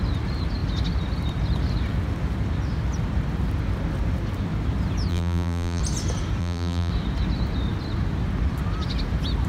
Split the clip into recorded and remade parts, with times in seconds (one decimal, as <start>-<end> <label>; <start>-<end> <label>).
0.0-5.1 recorded; 5.1-5.8 remade; 5.8-6.4 recorded; 6.4-6.9 remade; 6.9-9.5 recorded